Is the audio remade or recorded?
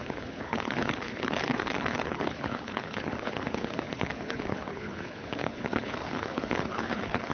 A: remade